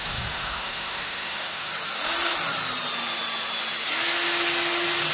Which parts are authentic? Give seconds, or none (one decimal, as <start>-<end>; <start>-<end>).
1.7-5.1